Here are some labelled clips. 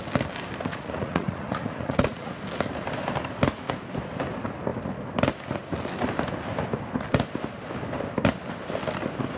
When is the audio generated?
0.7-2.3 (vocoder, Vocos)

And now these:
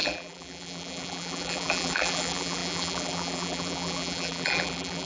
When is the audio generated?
0.0-5.1 (vocoder, BigVGAN v2)

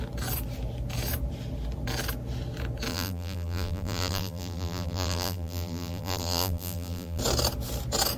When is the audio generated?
2.9-7.2 (vocoder, BigVGAN v2)

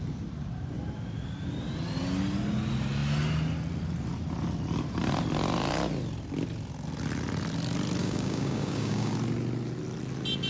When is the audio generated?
8.0-9.1 (codec, DAC)

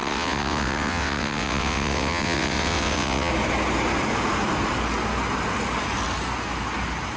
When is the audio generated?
0.0-3.3 (vocoder, WaveNeXt)